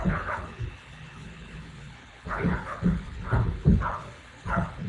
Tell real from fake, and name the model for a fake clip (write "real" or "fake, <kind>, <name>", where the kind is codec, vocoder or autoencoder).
fake, codec, HILCodec